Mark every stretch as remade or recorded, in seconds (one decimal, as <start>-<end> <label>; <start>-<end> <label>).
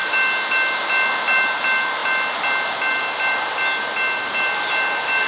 0.0-5.3 recorded